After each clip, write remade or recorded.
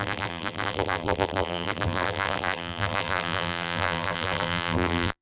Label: remade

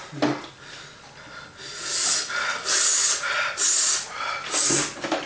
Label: recorded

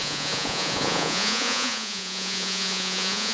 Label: remade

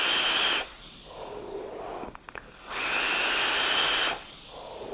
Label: recorded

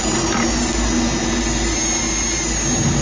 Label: recorded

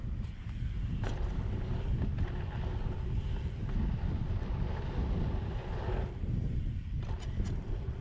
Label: recorded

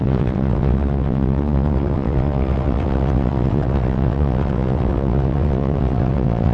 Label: remade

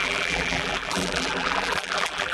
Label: remade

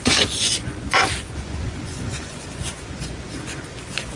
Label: remade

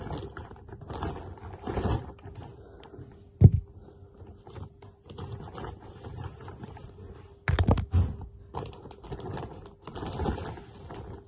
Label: recorded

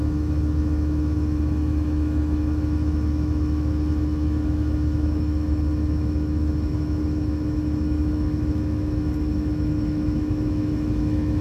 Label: remade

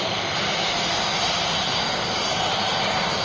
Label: recorded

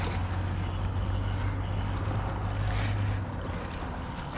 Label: recorded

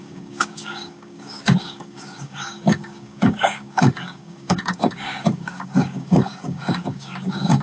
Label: remade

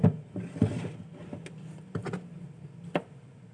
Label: recorded